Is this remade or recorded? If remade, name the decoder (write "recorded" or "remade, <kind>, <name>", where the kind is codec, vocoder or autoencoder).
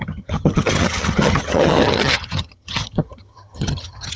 remade, vocoder, HiFi-GAN